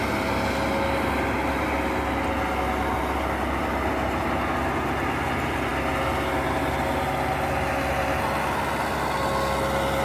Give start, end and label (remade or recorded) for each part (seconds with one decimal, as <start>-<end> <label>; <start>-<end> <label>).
0.0-10.0 recorded